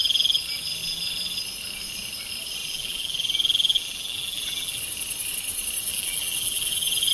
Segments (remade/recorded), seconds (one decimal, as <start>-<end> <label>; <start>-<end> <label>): 0.0-2.6 recorded; 2.6-4.8 remade; 4.8-5.9 recorded; 5.9-7.1 remade